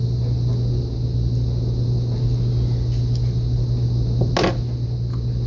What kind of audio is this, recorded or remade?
recorded